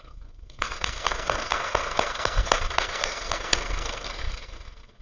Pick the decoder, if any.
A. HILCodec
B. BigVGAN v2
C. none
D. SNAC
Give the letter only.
D